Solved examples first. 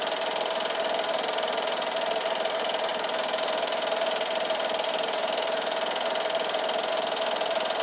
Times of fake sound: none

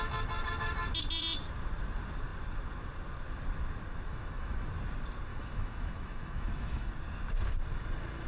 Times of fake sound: 4.1-4.7; 5.3-6.9